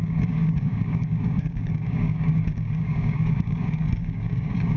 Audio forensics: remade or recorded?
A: remade